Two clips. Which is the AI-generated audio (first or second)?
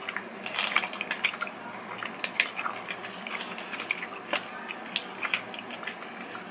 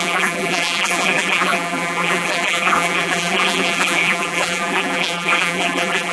second